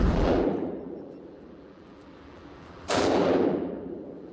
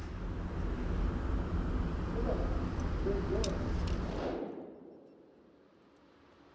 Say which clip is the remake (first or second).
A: first